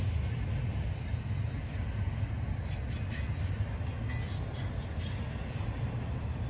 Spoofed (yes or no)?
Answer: no